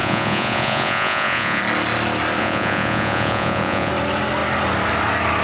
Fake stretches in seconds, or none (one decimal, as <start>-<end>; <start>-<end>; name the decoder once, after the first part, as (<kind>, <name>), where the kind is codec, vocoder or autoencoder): 0.0-1.6 (vocoder, Vocos); 2.4-3.9